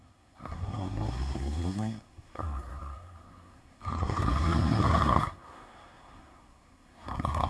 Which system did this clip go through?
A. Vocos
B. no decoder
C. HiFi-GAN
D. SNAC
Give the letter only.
D